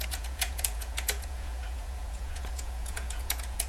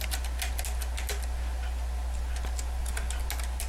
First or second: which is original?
second